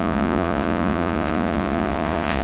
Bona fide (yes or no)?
no